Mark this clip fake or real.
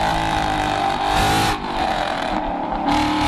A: real